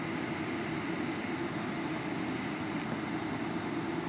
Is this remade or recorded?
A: recorded